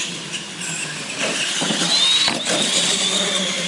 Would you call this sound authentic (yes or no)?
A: yes